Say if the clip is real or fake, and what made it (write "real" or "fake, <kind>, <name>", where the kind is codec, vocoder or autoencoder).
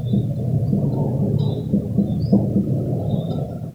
real